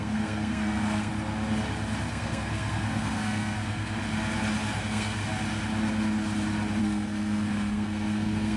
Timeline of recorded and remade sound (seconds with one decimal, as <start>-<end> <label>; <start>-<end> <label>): 0.0-1.1 remade; 1.1-2.1 recorded; 2.1-4.0 remade; 4.0-4.8 recorded; 4.8-5.2 remade; 5.2-6.8 recorded; 6.8-8.6 remade